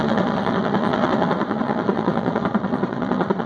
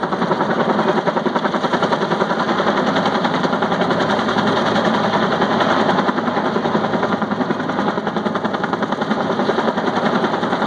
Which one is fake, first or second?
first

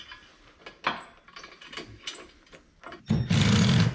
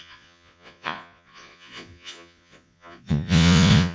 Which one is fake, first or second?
second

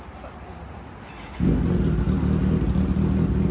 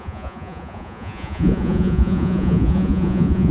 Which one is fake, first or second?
second